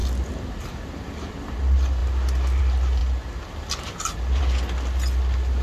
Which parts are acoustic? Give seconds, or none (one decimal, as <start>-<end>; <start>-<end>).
0.0-5.6